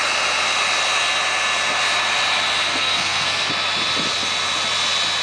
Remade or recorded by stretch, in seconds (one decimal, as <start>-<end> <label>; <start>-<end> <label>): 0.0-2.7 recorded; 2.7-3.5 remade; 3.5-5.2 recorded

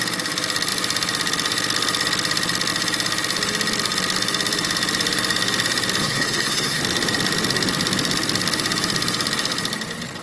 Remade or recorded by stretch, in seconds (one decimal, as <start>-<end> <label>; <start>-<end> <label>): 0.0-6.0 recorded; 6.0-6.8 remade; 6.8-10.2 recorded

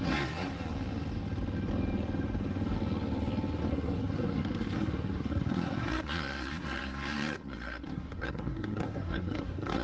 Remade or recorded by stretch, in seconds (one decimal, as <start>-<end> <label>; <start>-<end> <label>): 0.0-0.5 remade; 0.5-3.7 recorded; 3.7-9.8 remade

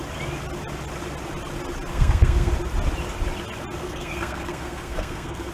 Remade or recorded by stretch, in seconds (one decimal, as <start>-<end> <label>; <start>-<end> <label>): 0.0-1.9 recorded; 1.9-2.5 remade; 2.5-3.8 recorded; 3.8-5.5 remade

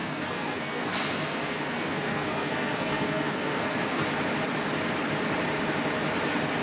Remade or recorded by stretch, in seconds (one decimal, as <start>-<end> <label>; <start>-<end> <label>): 0.0-4.0 remade; 4.0-6.6 recorded